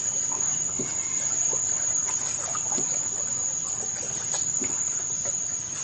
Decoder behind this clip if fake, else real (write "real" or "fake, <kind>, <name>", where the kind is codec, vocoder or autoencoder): real